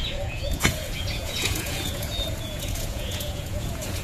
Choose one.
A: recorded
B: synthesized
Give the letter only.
B